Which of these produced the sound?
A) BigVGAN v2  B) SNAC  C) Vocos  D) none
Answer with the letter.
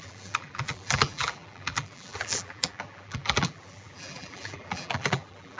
A